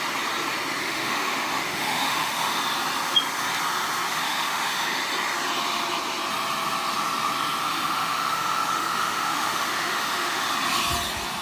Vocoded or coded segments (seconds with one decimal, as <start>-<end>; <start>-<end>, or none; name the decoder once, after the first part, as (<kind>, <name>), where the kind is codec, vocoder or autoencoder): 0.8-2.6 (autoencoder, DAC-VAE); 4.1-5.0; 7.6-10.5

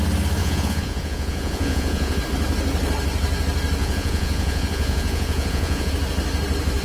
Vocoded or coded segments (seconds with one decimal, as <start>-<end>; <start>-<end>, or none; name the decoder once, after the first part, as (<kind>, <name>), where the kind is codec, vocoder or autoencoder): 0.4-2.2 (vocoder, Vocos); 3.8-5.9